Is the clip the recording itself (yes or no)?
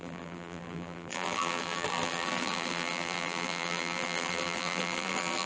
no